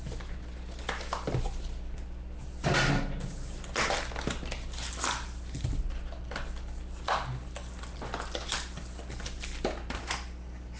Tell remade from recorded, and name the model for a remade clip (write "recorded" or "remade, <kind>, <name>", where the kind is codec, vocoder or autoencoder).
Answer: recorded